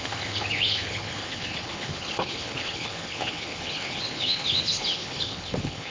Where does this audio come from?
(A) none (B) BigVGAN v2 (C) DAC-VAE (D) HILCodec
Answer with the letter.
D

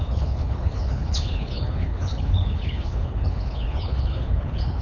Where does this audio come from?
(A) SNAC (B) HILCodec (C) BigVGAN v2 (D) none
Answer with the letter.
B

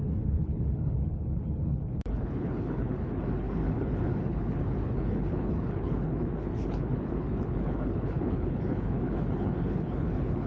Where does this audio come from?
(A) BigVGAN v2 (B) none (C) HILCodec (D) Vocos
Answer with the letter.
C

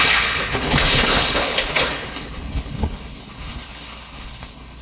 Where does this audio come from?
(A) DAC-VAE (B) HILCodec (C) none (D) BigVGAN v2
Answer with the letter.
B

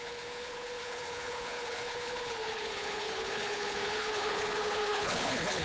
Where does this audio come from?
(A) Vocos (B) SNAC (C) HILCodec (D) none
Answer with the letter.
C